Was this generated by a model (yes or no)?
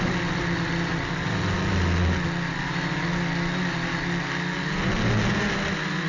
no